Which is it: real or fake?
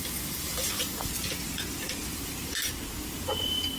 real